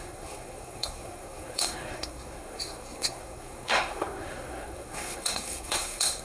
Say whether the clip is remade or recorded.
remade